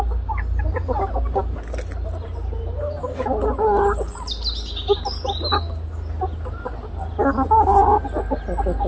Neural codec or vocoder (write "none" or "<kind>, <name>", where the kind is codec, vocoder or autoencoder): none